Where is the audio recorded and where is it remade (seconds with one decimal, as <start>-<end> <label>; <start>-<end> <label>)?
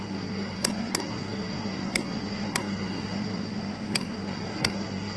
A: 0.0-5.2 remade